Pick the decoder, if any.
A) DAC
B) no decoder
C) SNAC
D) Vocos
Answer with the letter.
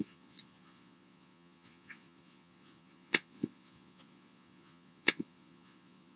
D